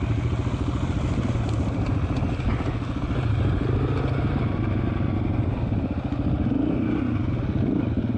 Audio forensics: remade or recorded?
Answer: recorded